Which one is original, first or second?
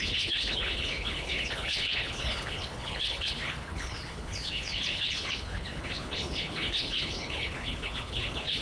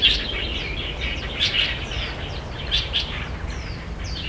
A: second